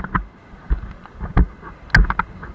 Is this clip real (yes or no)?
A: yes